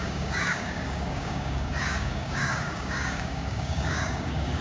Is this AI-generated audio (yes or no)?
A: yes